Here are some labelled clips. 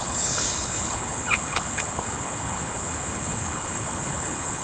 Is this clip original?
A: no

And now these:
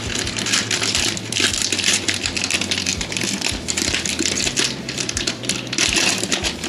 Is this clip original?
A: no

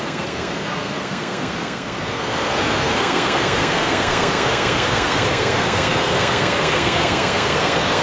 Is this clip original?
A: no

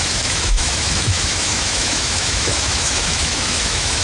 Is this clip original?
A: no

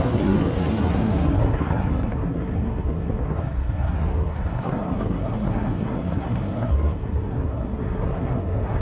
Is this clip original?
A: no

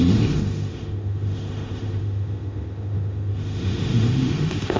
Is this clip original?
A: no